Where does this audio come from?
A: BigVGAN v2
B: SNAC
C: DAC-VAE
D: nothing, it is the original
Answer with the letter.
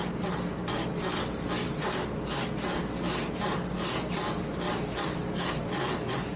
D